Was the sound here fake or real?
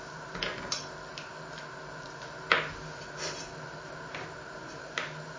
real